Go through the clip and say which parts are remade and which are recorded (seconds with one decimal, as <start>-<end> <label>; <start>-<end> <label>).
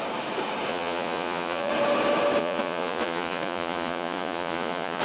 0.0-0.7 recorded; 0.7-1.7 remade; 1.7-2.4 recorded; 2.4-5.0 remade